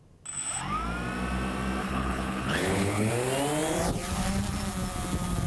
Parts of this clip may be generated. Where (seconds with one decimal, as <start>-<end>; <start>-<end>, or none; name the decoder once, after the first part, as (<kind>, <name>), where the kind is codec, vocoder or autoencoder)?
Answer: 1.8-3.1 (codec, HILCodec)